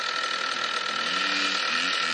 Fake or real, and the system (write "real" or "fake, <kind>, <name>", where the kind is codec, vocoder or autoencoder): real